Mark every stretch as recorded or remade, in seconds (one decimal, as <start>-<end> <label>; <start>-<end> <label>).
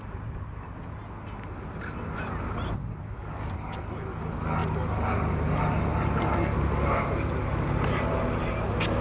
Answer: 0.0-9.0 recorded